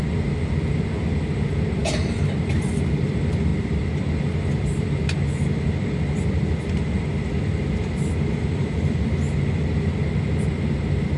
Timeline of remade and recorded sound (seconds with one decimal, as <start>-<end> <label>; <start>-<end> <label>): 0.0-3.5 recorded; 3.5-4.0 remade; 4.0-11.2 recorded